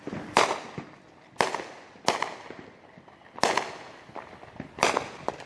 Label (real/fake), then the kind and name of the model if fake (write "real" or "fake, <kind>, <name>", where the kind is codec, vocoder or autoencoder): real